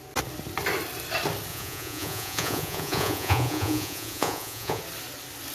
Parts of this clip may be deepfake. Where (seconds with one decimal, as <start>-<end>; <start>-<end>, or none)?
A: 1.5-4.8